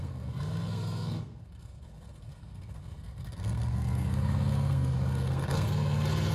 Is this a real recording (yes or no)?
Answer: no